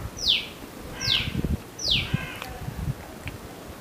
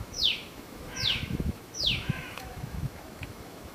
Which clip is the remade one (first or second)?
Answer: second